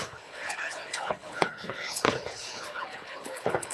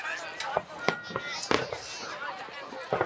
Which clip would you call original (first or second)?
second